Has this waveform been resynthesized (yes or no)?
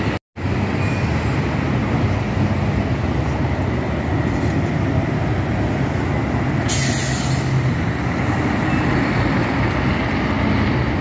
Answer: no